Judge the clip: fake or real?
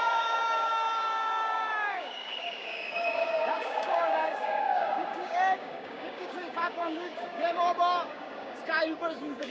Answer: fake